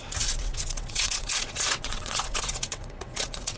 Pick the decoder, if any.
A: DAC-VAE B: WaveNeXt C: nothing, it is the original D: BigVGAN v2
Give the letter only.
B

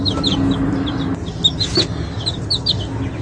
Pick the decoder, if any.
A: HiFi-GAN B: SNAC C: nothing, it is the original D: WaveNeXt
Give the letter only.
C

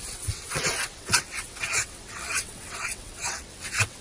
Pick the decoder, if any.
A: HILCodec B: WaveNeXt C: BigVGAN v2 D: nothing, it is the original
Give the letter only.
B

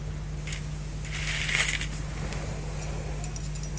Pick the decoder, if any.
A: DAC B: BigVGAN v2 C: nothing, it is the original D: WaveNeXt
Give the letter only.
C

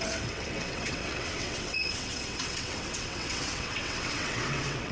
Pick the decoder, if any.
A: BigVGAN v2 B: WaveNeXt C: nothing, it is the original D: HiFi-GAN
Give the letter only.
B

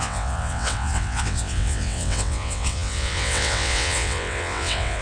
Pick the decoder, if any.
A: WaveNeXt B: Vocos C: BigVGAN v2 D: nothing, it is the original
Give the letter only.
A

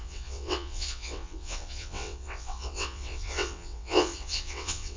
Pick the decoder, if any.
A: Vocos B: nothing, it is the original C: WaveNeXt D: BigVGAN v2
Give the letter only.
C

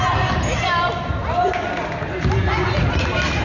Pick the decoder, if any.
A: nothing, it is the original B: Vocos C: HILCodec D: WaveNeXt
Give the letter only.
A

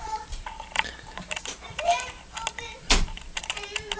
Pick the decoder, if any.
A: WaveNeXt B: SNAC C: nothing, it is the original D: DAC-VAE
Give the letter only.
C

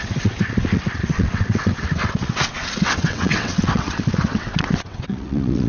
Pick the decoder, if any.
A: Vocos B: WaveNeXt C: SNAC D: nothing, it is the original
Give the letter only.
B